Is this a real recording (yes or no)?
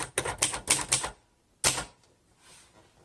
yes